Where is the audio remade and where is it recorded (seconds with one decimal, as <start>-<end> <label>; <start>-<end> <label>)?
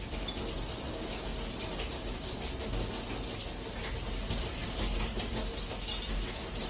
0.0-6.7 recorded